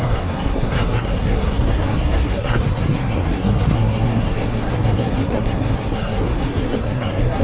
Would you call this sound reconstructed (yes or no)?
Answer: yes